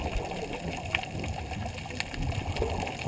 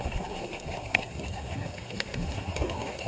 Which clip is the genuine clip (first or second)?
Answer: first